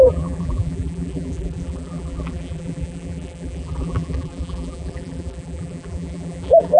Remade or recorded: remade